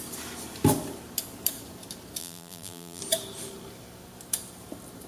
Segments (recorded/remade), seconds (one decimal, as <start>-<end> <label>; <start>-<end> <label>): 0.0-2.2 recorded; 2.2-3.0 remade; 3.0-5.1 recorded